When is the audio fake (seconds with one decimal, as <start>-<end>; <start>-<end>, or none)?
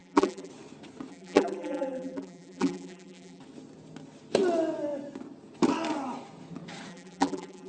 0.0-0.5; 1.1-3.4; 6.9-7.7